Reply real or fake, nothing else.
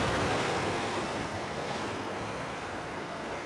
fake